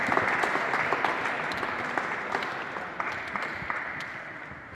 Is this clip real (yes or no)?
yes